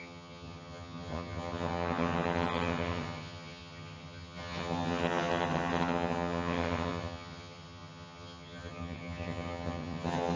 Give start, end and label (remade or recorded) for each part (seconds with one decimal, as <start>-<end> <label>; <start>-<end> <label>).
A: 0.0-10.4 remade